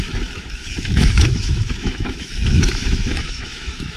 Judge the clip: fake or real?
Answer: fake